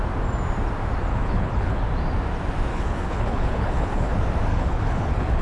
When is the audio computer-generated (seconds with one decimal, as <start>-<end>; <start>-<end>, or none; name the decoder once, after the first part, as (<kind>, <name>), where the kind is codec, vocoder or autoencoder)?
1.1-1.8 (codec, HILCodec); 2.7-4.1; 4.5-5.4